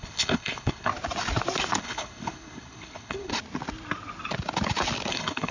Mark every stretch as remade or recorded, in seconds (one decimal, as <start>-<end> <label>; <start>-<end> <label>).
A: 0.0-0.9 remade; 0.9-1.8 recorded; 1.8-3.3 remade; 3.3-5.1 recorded; 5.1-5.5 remade